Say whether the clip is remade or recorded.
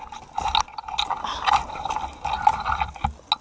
recorded